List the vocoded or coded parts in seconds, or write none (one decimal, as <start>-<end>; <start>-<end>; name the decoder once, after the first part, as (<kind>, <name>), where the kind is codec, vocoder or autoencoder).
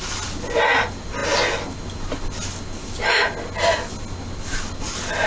none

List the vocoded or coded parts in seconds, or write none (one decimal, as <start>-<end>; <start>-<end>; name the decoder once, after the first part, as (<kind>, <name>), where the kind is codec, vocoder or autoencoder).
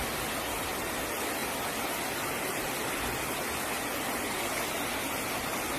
none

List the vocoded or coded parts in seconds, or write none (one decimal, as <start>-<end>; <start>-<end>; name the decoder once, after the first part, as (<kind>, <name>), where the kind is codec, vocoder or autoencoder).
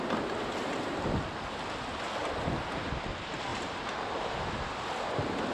3.5-4.5 (vocoder, BigVGAN v2)